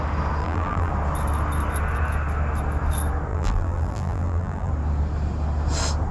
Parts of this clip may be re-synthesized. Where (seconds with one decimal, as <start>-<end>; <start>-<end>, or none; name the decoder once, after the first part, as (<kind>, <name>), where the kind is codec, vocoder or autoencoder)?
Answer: 0.4-0.9 (vocoder, BigVGAN v2); 3.3-4.7